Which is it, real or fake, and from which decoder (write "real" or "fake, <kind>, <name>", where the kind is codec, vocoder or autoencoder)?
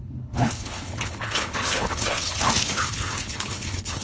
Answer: fake, codec, HILCodec